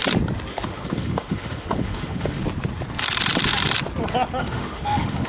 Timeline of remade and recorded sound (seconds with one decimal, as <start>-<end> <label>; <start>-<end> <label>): 0.0-0.5 recorded; 0.5-2.4 remade; 2.4-4.4 recorded; 4.4-5.3 remade